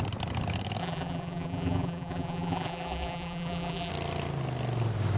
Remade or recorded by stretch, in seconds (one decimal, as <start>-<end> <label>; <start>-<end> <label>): 0.0-0.8 recorded; 0.8-3.9 remade; 3.9-5.2 recorded